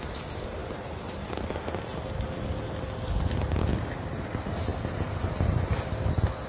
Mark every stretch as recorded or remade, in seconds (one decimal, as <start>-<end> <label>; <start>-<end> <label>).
0.0-6.5 recorded